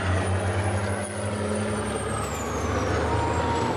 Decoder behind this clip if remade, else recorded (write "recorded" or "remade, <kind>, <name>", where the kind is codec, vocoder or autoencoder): recorded